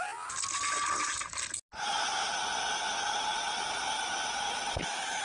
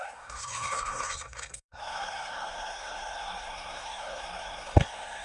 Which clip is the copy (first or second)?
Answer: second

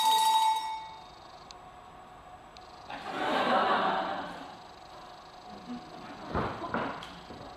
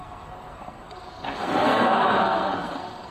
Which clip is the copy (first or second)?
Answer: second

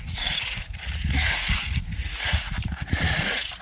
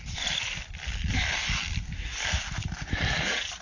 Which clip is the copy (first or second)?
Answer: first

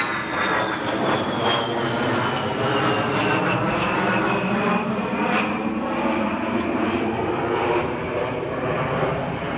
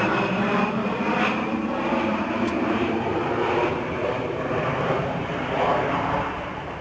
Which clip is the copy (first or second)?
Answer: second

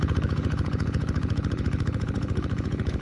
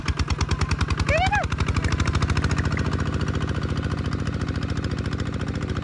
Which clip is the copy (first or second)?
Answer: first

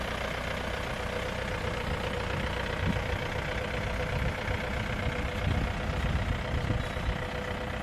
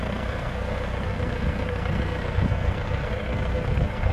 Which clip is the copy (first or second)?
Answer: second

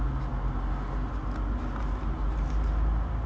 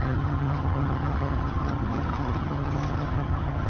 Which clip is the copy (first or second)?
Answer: second